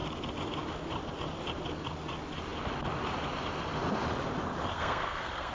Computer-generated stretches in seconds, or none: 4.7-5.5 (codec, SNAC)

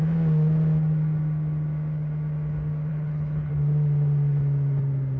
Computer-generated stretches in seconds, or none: 2.9-3.5 (codec, HILCodec)

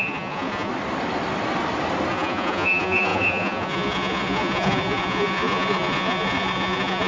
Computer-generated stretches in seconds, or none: 0.0-0.7 (vocoder, Vocos); 2.1-7.1

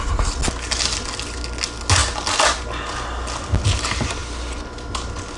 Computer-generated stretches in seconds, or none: none